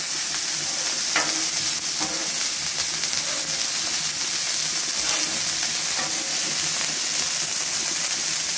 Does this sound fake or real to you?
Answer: real